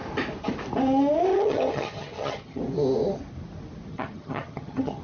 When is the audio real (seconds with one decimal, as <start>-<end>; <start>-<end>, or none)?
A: 0.0-1.3; 2.6-3.9